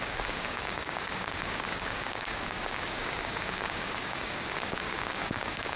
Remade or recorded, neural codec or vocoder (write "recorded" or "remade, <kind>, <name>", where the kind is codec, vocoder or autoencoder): remade, codec, DAC